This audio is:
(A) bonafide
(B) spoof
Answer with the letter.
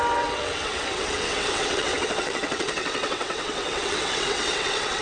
B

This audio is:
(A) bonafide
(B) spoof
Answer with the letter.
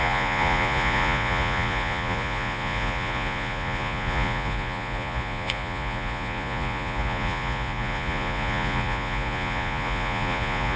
B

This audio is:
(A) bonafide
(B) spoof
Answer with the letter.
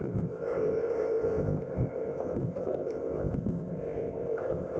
B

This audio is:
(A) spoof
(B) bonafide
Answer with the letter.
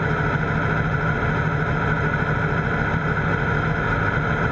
B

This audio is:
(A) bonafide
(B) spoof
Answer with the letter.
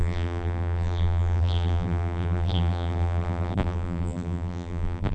B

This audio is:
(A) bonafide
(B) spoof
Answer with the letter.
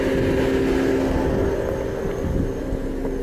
A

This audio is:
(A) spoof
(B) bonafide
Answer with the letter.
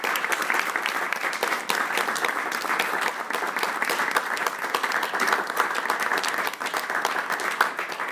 B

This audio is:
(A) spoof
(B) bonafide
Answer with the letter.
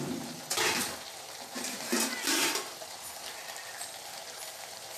A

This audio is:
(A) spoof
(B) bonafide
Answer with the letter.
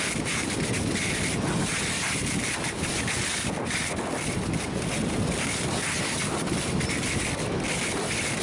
B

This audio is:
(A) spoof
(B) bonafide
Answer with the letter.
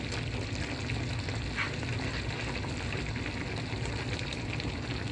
B